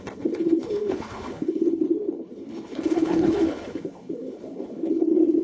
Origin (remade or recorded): remade